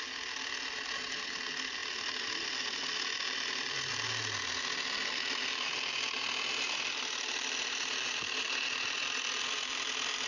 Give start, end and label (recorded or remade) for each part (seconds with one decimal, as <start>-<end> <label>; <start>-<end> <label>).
0.0-10.3 recorded